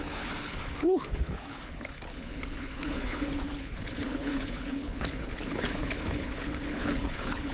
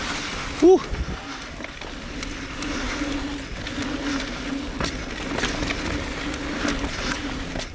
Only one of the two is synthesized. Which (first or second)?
first